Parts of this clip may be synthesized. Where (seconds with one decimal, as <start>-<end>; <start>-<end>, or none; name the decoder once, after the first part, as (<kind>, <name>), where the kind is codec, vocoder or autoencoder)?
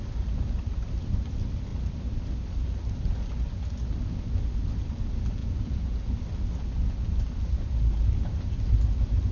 5.4-6.1 (vocoder, Vocos)